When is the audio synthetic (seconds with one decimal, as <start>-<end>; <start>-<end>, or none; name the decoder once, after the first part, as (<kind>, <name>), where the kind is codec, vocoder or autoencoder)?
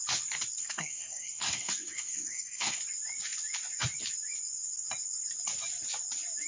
0.6-2.8 (codec, SNAC)